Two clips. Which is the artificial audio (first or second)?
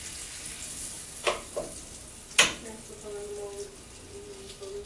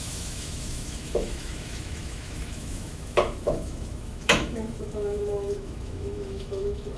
second